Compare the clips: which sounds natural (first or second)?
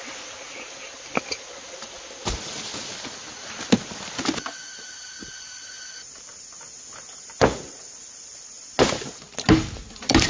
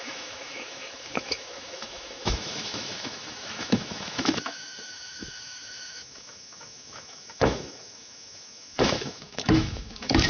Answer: first